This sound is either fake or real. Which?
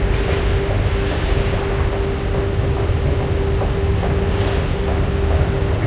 real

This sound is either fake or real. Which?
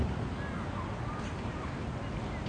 real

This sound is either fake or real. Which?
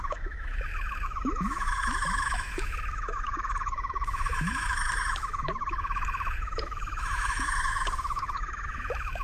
fake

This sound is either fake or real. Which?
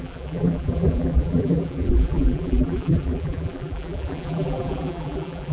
fake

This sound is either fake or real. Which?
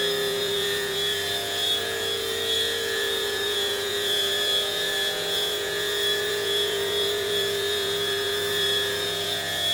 fake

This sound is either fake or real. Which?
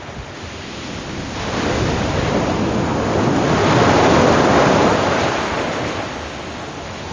real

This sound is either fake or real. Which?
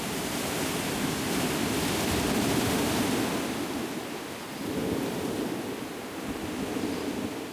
real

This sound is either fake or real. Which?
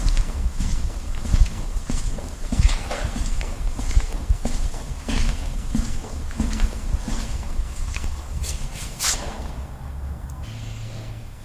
fake